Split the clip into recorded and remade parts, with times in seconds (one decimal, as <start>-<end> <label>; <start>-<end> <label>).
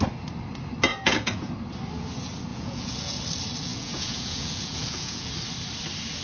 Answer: 0.0-0.9 recorded; 0.9-1.5 remade; 1.5-2.5 recorded; 2.5-3.2 remade; 3.2-3.7 recorded; 3.7-5.3 remade; 5.3-6.2 recorded